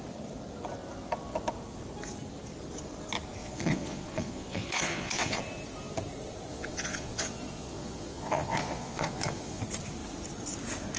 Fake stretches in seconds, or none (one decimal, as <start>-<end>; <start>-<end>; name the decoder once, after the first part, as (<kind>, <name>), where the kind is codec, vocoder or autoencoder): 3.4-5.4 (vocoder, Vocos); 6.5-9.6